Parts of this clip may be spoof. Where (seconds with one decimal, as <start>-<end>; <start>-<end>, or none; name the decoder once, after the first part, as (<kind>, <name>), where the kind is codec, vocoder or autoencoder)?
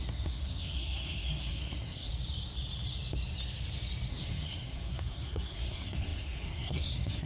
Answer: 0.0-2.1 (codec, SNAC); 4.1-7.3